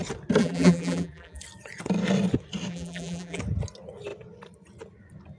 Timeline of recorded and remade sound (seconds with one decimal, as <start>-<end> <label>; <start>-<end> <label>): 0.0-0.4 recorded; 0.4-1.4 remade; 1.4-2.7 recorded; 2.7-3.4 remade; 3.4-5.4 recorded